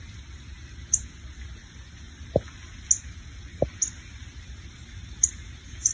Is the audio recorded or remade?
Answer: recorded